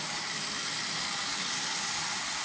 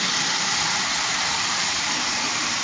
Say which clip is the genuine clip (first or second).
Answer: first